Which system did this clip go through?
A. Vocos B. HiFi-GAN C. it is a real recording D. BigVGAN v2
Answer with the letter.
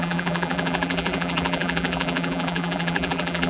D